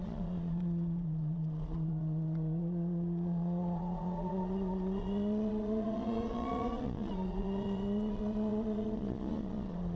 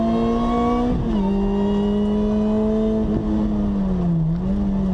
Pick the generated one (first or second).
first